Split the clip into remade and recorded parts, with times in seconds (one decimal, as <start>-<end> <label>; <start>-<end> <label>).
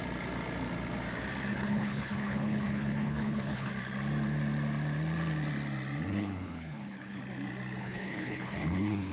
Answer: 0.0-1.5 recorded; 1.5-3.7 remade; 3.7-6.1 recorded; 6.1-7.2 remade; 7.2-7.8 recorded; 7.8-9.1 remade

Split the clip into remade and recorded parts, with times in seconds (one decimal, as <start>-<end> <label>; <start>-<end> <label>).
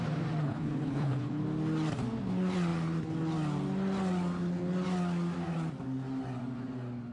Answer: 0.0-0.4 recorded; 0.4-1.4 remade; 1.4-7.1 recorded